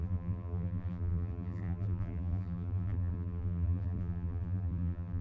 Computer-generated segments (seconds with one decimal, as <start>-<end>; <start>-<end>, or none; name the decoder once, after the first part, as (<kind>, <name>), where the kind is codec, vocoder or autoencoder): 0.0-5.2 (vocoder, BigVGAN v2)